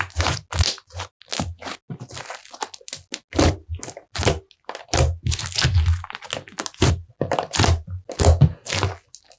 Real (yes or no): yes